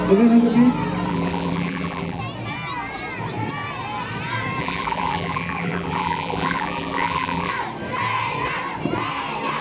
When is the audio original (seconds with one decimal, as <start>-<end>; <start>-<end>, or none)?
0.0-1.1; 2.2-4.6; 7.5-9.6